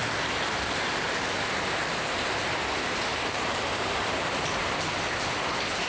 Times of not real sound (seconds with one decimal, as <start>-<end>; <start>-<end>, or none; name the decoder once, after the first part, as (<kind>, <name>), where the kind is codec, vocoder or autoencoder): 3.1-5.3 (vocoder, BigVGAN v2)